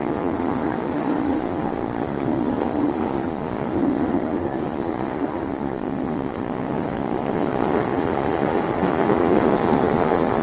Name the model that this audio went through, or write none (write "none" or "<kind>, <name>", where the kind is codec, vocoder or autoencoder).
vocoder, Vocos